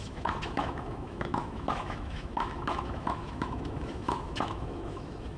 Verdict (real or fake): fake